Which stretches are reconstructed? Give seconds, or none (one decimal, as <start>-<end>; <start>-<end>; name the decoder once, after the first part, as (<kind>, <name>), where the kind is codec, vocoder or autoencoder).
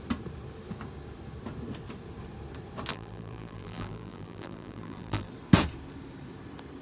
2.9-5.3 (vocoder, BigVGAN v2)